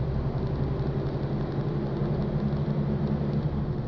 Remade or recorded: recorded